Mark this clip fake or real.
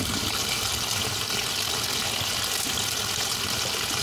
real